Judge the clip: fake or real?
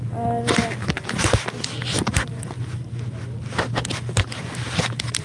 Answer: real